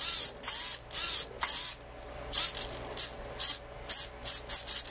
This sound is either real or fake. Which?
real